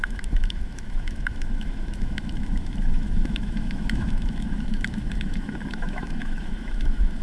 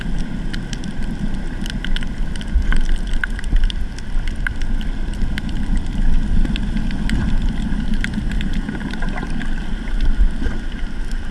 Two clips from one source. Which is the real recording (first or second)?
second